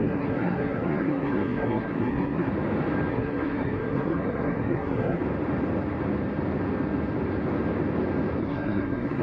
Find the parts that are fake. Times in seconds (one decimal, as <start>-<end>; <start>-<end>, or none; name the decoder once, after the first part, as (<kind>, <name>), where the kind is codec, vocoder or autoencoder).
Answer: 0.0-2.5 (codec, SNAC); 3.1-5.2; 8.4-9.2